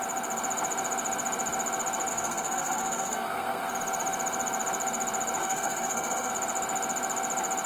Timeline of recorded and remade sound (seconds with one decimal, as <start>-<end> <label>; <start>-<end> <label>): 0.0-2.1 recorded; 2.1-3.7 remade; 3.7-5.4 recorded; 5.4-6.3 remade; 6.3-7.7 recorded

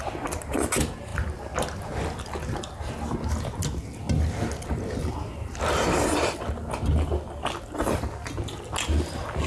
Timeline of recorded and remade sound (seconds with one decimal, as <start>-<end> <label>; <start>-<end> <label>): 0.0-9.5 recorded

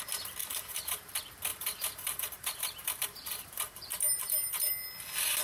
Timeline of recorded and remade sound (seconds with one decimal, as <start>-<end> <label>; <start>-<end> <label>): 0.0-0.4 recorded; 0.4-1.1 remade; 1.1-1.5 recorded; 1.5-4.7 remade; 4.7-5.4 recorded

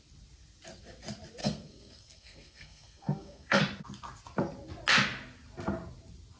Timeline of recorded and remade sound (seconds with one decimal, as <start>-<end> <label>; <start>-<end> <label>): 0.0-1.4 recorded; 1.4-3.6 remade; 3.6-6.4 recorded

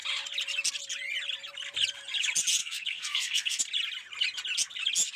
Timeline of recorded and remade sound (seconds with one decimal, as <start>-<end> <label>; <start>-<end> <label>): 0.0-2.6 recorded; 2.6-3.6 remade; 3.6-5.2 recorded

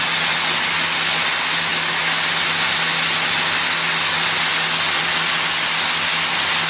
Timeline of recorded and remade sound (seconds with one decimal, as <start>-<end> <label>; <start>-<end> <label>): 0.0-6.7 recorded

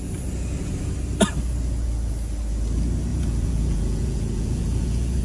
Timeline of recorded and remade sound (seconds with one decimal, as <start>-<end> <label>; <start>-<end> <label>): 0.0-3.1 recorded; 3.1-5.2 remade

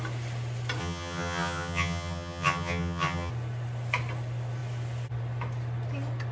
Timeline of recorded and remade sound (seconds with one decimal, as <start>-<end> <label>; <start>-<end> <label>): 0.0-0.8 recorded; 0.8-3.3 remade; 3.3-6.3 recorded